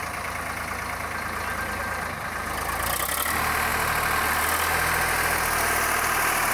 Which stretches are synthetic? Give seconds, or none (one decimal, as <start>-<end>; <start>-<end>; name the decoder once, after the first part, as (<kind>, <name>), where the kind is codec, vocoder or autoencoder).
none

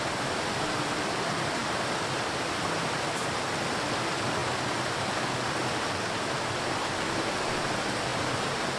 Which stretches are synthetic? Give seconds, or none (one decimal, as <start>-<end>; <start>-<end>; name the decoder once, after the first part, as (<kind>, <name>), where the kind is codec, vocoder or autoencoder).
8.1-8.8 (vocoder, BigVGAN v2)